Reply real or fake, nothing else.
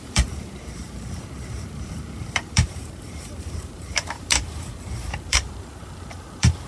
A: fake